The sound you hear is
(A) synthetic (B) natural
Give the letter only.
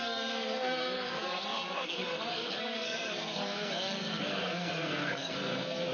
A